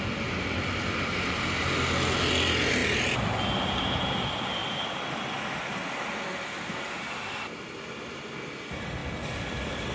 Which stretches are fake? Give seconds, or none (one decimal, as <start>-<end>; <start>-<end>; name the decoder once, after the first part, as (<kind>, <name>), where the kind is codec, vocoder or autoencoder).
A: 4.6-5.4 (vocoder, BigVGAN v2); 6.3-7.4